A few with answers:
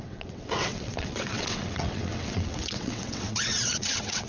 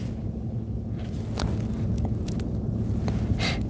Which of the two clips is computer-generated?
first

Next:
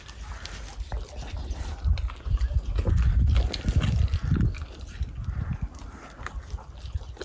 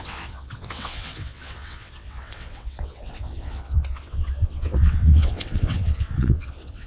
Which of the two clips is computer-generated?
second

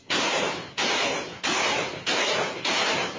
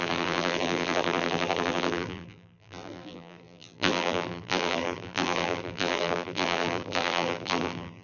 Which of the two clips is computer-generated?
second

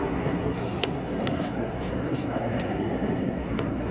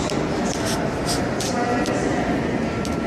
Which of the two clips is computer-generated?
first